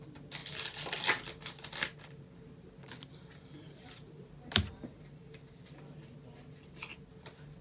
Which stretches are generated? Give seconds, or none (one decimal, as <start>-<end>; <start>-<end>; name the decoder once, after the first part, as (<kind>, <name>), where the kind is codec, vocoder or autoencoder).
none